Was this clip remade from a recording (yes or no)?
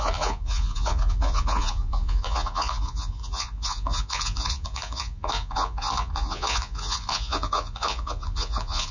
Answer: yes